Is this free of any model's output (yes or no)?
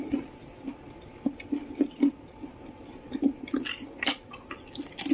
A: yes